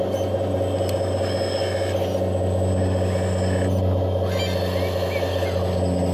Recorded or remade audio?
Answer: recorded